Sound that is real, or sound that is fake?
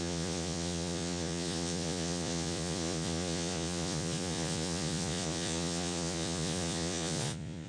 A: fake